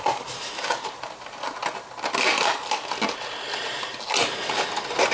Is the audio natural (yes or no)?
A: yes